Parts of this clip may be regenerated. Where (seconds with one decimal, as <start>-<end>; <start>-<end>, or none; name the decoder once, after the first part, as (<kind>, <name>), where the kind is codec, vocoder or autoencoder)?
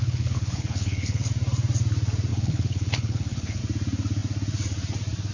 0.0-1.3 (codec, HILCodec); 2.3-3.6